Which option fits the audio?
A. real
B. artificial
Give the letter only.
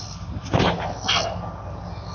A